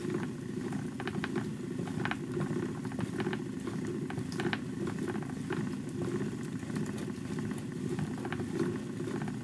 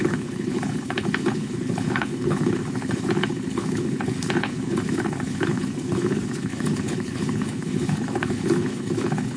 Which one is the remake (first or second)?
second